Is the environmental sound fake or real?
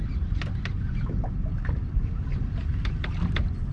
real